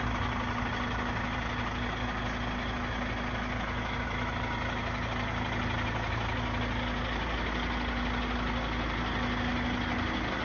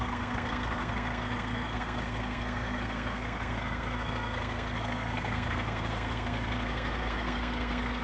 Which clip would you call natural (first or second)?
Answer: first